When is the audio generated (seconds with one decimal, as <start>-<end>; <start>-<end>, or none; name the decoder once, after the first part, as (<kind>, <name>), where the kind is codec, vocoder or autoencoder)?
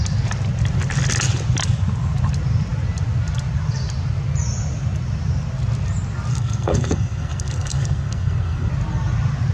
6.3-8.7 (codec, SNAC)